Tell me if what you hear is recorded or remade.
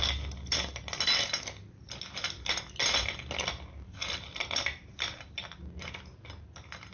recorded